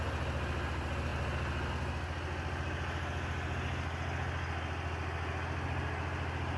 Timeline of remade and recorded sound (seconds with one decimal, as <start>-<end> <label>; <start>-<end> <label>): 0.0-6.6 recorded